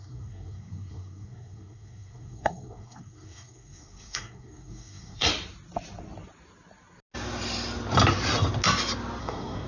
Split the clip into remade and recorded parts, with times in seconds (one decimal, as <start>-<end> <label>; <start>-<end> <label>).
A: 0.0-5.3 remade; 5.3-9.2 recorded; 9.2-9.7 remade